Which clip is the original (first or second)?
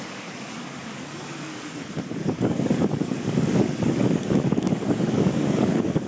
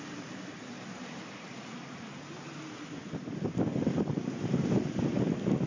second